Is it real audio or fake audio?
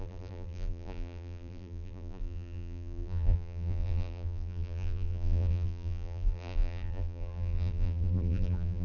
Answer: fake